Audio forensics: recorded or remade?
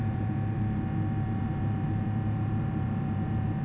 remade